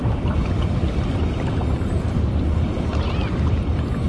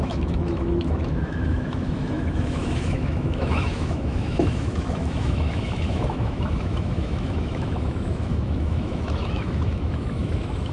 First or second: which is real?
first